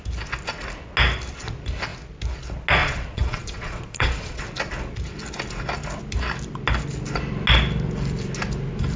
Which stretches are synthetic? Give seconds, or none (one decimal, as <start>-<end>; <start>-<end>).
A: 2.8-4.4